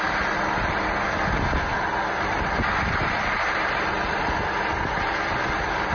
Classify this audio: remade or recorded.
recorded